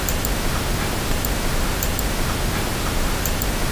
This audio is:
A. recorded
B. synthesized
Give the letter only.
A